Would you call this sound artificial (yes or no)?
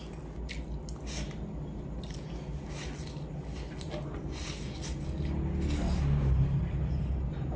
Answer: no